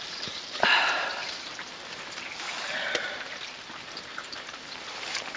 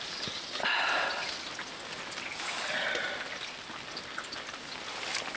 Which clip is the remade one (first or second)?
first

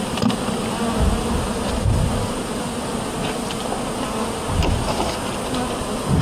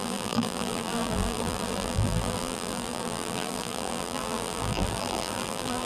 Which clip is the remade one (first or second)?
second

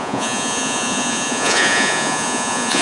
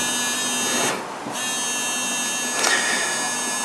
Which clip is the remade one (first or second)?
first